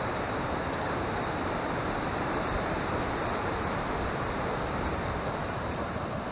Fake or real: fake